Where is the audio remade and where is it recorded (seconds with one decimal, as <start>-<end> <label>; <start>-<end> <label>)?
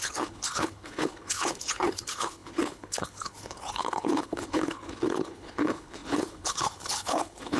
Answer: 0.0-7.6 remade